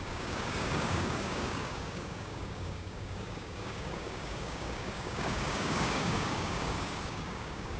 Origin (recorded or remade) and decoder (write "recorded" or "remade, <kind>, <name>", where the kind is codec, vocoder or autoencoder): remade, codec, DAC